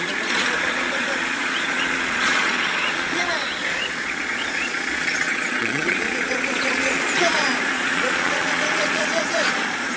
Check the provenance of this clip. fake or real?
fake